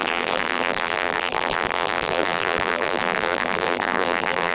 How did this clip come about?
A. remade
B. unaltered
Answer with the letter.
A